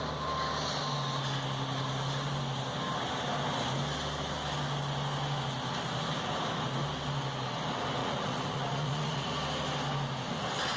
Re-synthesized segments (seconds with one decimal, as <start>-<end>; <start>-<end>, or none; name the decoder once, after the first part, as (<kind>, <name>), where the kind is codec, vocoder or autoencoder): 8.0-9.3 (vocoder, Vocos)